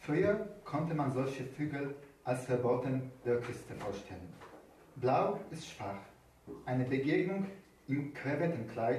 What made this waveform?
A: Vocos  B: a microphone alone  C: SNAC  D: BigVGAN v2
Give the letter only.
B